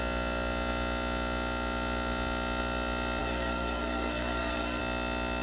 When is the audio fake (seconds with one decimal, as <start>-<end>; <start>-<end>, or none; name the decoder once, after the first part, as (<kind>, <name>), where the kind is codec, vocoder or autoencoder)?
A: 3.2-4.8 (codec, SNAC)